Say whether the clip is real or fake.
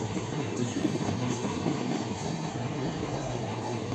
fake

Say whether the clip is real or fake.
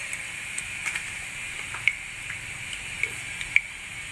fake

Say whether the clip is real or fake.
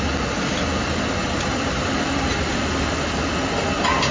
real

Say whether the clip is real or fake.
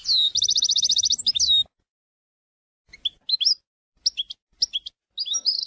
real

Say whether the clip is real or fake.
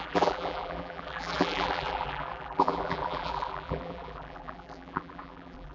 fake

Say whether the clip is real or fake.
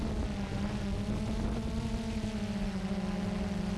real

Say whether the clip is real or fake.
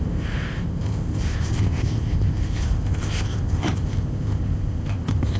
fake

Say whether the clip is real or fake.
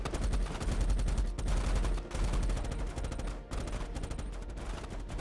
real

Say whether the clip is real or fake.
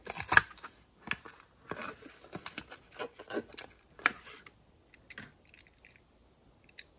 real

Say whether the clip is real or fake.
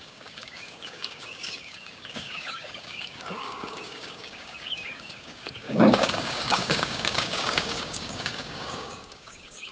fake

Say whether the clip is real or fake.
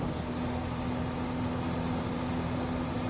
real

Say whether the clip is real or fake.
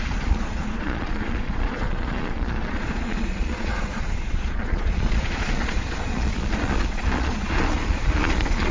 fake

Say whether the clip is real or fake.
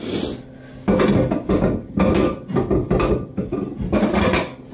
real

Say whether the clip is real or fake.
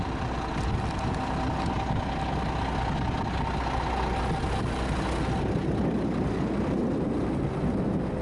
real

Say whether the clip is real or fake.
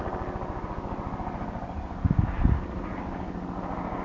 real